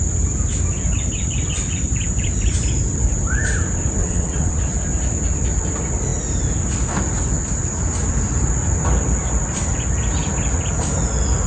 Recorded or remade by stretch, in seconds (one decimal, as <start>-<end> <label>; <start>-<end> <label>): 0.0-4.0 recorded; 4.0-4.6 remade; 4.6-11.5 recorded